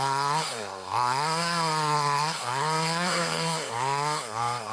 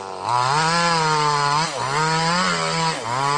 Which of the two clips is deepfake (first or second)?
first